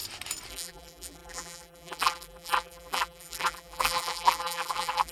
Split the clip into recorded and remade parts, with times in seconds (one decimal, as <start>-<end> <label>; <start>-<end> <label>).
0.0-0.5 recorded; 0.5-5.1 remade

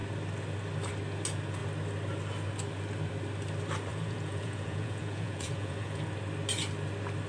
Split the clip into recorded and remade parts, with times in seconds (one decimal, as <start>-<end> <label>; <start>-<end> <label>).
0.0-3.9 recorded; 3.9-6.0 remade; 6.0-7.3 recorded

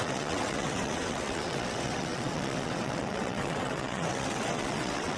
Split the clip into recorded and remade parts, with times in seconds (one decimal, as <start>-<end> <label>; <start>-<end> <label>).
0.0-5.2 remade

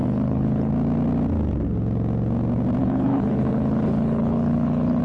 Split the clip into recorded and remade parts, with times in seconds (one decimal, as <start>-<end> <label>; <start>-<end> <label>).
0.0-0.7 remade; 0.7-2.8 recorded; 2.8-5.0 remade

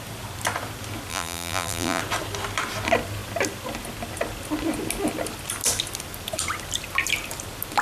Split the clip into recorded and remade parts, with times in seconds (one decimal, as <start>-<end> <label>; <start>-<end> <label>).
0.0-1.1 recorded; 1.1-2.0 remade; 2.0-7.8 recorded

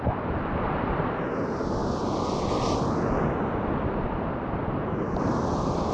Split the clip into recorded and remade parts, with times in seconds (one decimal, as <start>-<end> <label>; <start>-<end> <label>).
0.0-5.9 recorded